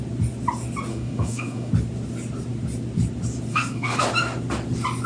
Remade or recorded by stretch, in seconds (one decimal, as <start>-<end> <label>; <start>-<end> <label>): 0.0-0.9 recorded; 0.9-1.7 remade; 1.7-3.5 recorded; 3.5-4.0 remade; 4.0-5.1 recorded